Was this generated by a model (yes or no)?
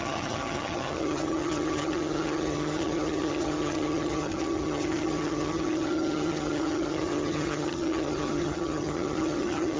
yes